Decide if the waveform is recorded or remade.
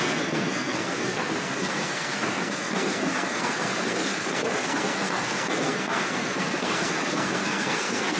remade